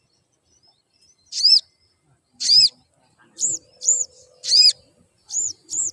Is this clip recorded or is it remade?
remade